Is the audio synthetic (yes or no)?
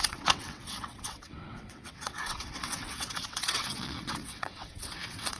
yes